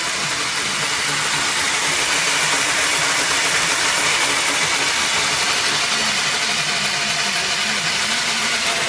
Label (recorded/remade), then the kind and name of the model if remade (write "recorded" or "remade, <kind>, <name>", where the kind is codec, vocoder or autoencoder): recorded